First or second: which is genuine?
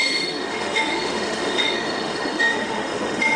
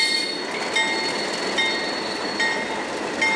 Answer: second